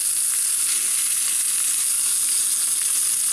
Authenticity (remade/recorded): recorded